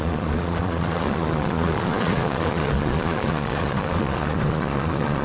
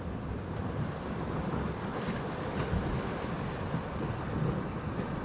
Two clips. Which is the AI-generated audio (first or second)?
first